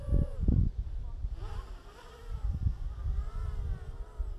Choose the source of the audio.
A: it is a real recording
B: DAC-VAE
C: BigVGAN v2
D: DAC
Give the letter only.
C